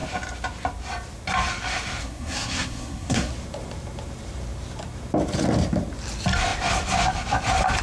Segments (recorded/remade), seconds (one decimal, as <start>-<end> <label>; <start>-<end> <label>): 0.0-2.0 recorded; 2.0-3.3 remade; 3.3-7.8 recorded